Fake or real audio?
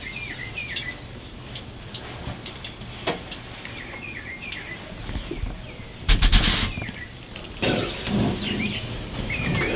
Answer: real